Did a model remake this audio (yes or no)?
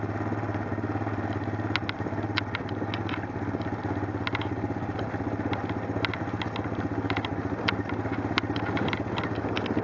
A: no